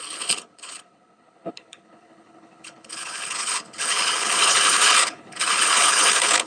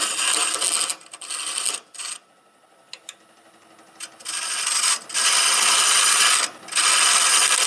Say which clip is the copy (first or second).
first